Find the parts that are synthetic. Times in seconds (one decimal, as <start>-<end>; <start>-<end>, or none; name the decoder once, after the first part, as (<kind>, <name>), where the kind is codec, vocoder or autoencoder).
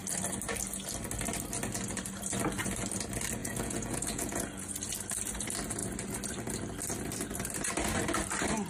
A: 3.4-4.7 (vocoder, Vocos)